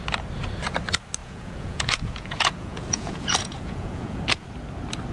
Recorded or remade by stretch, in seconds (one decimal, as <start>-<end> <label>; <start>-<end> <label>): 0.0-1.2 recorded; 1.2-4.2 remade; 4.2-5.1 recorded